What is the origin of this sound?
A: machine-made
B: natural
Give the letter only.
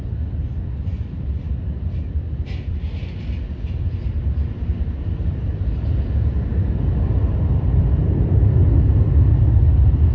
B